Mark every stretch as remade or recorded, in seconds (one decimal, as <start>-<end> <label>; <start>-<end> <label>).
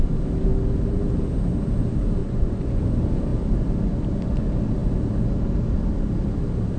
0.0-2.2 recorded; 2.2-2.8 remade; 2.8-6.8 recorded